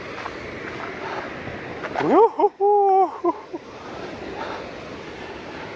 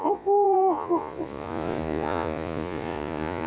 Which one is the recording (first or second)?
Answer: first